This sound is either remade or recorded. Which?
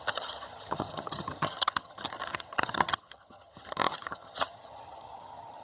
remade